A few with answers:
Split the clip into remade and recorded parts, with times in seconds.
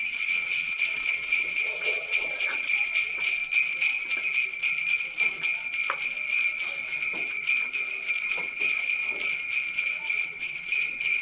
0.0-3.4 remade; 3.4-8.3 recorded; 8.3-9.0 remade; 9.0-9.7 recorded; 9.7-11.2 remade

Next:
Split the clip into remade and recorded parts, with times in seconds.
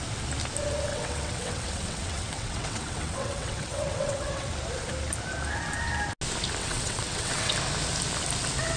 0.0-0.9 recorded; 0.9-4.5 remade; 4.5-6.6 recorded; 6.6-7.5 remade; 7.5-8.8 recorded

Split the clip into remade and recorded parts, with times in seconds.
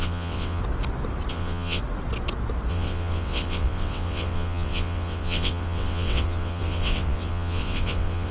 0.0-0.6 remade; 0.6-1.3 recorded; 1.3-1.8 remade; 1.8-2.7 recorded; 2.7-8.3 remade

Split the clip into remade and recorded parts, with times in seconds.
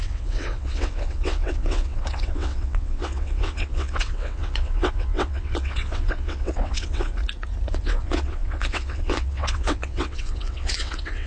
0.0-7.1 remade; 7.1-7.7 recorded; 7.7-11.3 remade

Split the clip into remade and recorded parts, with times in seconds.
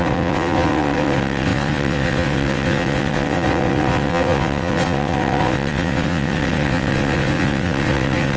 0.0-8.4 remade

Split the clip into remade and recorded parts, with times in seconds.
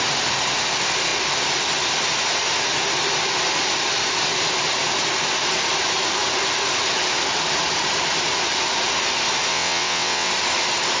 0.0-9.5 recorded; 9.5-10.3 remade; 10.3-11.0 recorded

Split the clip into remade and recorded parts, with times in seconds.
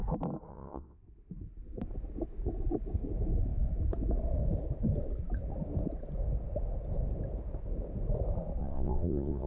0.0-0.5 recorded; 0.5-1.0 remade; 1.0-8.6 recorded; 8.6-9.5 remade